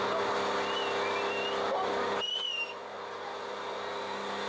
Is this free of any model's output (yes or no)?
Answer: yes